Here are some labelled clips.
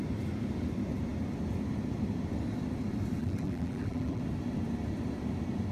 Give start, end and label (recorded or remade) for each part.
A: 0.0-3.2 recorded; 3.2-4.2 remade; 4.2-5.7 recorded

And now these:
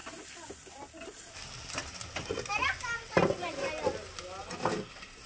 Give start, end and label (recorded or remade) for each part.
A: 0.0-5.3 recorded

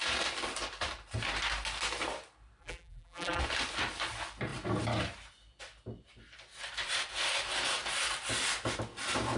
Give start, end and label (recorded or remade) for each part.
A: 0.0-2.6 recorded; 2.6-3.4 remade; 3.4-9.4 recorded

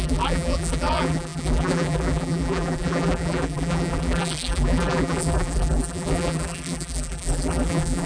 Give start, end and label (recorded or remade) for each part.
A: 0.0-8.1 remade

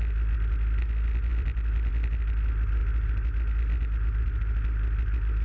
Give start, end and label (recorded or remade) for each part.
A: 0.0-1.3 recorded; 1.3-1.9 remade; 1.9-5.4 recorded

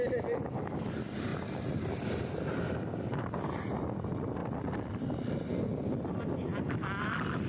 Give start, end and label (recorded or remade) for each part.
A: 0.0-4.4 recorded; 4.4-7.5 remade

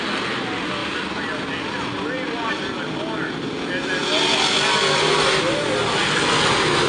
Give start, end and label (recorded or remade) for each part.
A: 0.0-6.9 recorded

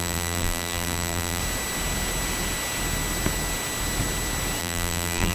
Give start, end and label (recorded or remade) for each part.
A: 0.0-1.4 remade; 1.4-4.6 recorded; 4.6-5.3 remade